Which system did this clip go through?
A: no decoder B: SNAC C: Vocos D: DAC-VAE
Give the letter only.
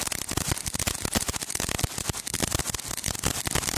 A